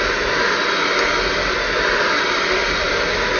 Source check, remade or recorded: recorded